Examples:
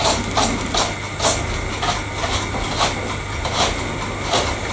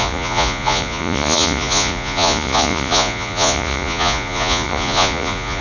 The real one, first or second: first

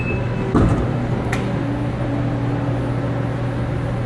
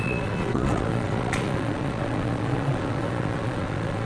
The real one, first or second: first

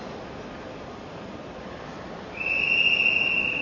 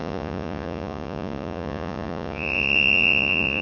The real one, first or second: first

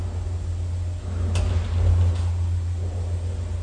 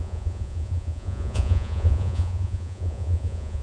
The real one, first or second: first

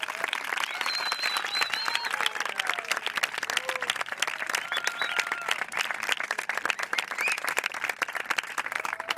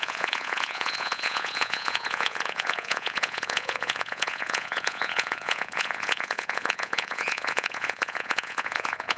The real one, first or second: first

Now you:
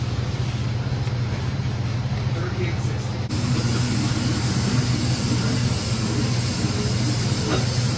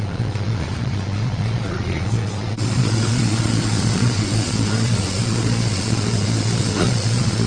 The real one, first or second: first